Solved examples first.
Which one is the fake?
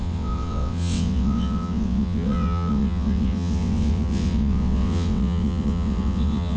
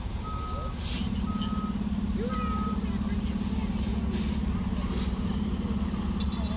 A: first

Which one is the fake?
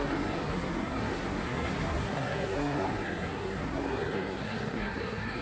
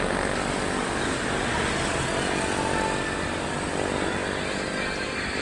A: first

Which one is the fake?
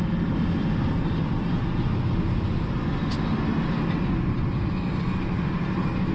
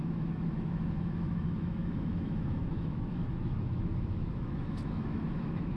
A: second